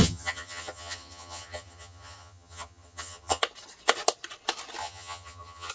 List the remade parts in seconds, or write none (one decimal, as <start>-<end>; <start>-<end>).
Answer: 0.0-3.4; 4.8-5.7

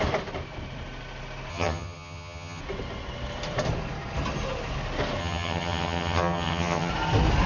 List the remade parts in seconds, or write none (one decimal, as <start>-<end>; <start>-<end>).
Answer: 1.5-2.6; 5.2-6.9

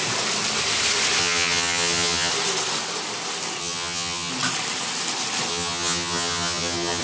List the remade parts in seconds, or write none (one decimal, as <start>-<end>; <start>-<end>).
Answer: 1.2-2.3; 3.6-4.3; 5.5-7.0

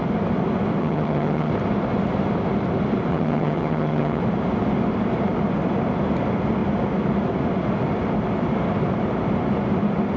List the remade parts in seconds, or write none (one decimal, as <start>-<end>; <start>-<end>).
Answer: 0.8-1.5; 3.1-4.2

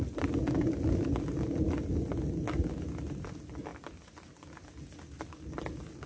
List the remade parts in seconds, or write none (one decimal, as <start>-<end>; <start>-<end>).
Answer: none

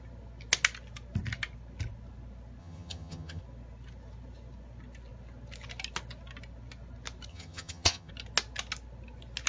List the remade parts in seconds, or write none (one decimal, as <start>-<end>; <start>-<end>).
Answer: 2.6-3.4; 7.3-8.1